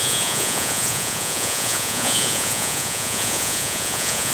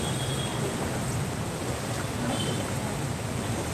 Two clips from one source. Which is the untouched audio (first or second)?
second